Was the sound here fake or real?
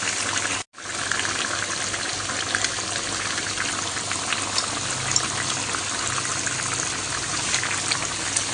real